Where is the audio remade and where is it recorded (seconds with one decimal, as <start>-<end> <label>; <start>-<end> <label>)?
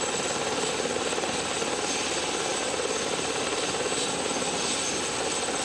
0.0-5.6 recorded